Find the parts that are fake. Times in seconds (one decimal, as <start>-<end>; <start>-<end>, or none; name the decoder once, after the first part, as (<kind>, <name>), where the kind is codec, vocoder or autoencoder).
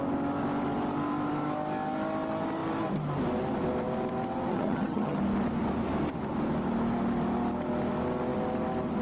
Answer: 4.5-5.2 (vocoder, HiFi-GAN)